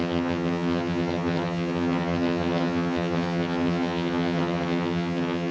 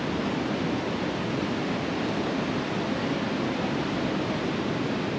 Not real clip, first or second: first